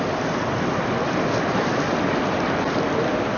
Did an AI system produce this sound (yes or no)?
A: no